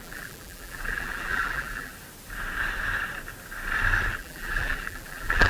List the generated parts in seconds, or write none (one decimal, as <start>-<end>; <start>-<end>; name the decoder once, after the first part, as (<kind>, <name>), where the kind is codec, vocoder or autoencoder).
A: 0.0-1.9 (vocoder, BigVGAN v2); 4.1-5.5